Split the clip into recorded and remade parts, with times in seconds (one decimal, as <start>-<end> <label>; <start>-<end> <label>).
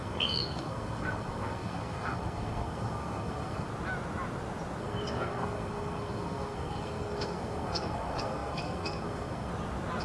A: 0.0-3.7 remade; 3.7-4.8 recorded; 4.8-9.5 remade; 9.5-10.0 recorded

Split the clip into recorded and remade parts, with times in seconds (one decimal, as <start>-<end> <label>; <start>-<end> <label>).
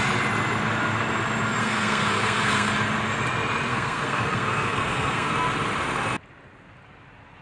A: 0.0-1.6 recorded; 1.6-2.7 remade; 2.7-3.7 recorded; 3.7-5.3 remade; 5.3-7.4 recorded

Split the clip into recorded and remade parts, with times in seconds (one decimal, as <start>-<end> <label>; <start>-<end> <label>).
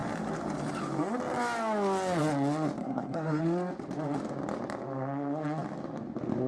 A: 0.0-2.8 recorded; 2.8-3.4 remade; 3.4-6.5 recorded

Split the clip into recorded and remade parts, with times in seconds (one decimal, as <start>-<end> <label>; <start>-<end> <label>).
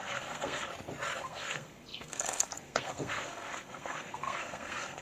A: 0.0-0.7 remade; 0.7-1.2 recorded; 1.2-5.0 remade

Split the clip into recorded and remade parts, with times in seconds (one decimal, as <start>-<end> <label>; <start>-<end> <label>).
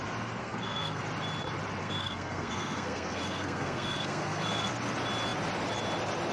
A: 0.0-0.4 recorded; 0.4-1.0 remade; 1.0-1.8 recorded; 1.8-4.7 remade; 4.7-6.3 recorded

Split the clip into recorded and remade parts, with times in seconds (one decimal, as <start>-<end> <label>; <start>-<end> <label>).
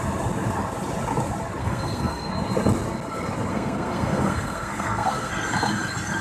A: 0.0-1.6 recorded; 1.6-2.3 remade; 2.3-3.5 recorded; 3.5-5.3 remade; 5.3-6.2 recorded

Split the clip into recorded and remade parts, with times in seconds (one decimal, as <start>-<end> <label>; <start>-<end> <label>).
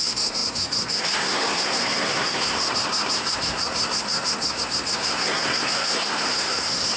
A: 0.0-7.0 remade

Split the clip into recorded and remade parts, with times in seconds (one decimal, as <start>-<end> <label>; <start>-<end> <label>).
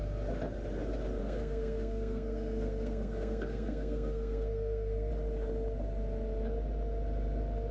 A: 0.0-1.2 recorded; 1.2-5.1 remade; 5.1-7.7 recorded